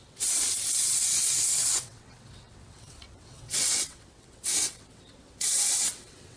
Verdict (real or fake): fake